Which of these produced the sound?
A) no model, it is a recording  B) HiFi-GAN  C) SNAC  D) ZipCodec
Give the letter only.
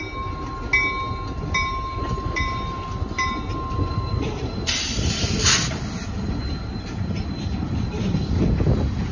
A